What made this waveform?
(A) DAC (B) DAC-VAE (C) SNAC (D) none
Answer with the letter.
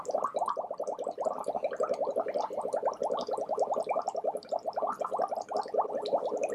D